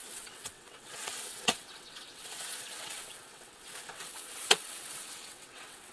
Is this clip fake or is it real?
fake